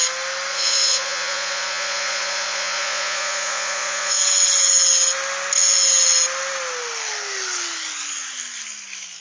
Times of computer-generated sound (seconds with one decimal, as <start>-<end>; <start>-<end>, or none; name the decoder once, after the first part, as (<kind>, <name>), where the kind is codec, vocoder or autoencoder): 0.5-4.2 (vocoder, Vocos)